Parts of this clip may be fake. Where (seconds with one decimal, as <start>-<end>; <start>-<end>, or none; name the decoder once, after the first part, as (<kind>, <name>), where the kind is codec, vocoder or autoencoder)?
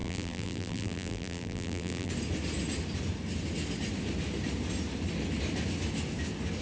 0.0-2.1 (vocoder, BigVGAN v2)